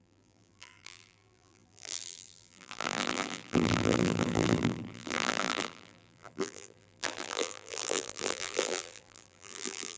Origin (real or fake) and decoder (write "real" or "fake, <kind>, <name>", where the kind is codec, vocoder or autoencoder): fake, vocoder, BigVGAN v2